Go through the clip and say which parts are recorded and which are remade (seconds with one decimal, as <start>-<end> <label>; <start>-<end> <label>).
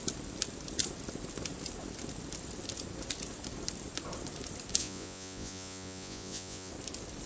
0.0-4.8 recorded; 4.8-6.7 remade; 6.7-7.3 recorded